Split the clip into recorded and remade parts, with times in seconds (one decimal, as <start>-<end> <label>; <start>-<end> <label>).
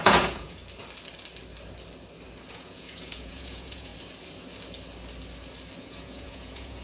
0.0-0.6 remade; 0.6-2.5 recorded; 2.5-3.9 remade; 3.9-5.8 recorded; 5.8-6.8 remade